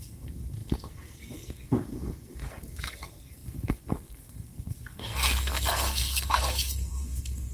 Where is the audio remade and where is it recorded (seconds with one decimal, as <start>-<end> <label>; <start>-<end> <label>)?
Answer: 0.0-7.5 remade